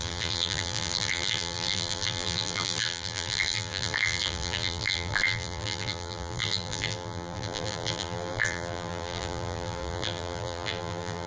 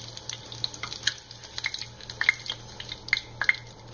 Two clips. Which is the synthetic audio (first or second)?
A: first